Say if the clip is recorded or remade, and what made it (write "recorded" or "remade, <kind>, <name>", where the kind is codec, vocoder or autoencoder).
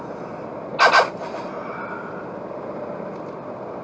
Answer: recorded